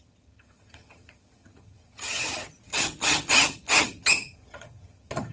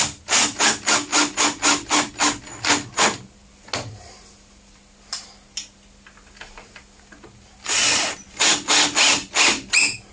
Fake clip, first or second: first